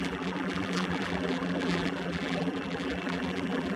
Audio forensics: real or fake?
fake